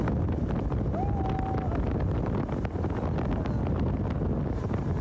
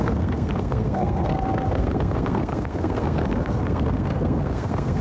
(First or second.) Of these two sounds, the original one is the first